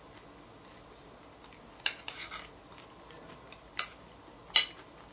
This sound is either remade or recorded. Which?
recorded